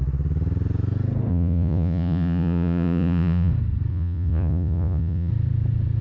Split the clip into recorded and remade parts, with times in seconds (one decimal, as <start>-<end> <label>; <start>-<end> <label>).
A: 0.0-1.3 recorded; 1.3-3.5 remade; 3.5-3.9 recorded; 3.9-5.3 remade; 5.3-6.0 recorded